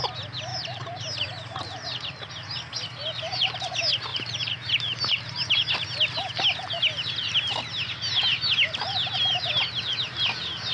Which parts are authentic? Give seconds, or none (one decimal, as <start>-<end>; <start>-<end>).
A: 0.0-0.5; 2.3-4.1; 5.7-10.7